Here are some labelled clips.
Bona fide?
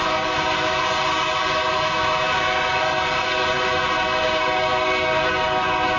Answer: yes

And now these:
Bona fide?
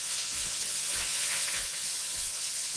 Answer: no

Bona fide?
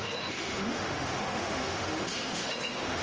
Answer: no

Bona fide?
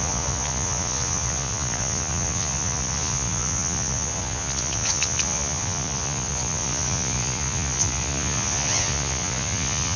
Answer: no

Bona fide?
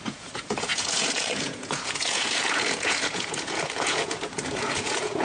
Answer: no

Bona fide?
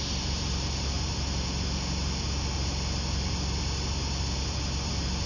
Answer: yes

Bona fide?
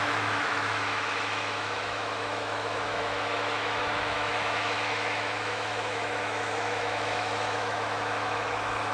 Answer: no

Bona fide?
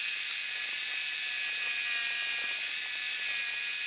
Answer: yes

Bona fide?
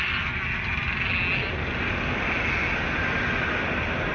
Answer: yes